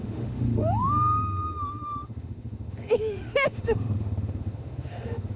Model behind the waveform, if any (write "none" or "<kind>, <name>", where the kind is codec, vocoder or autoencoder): autoencoder, DAC-VAE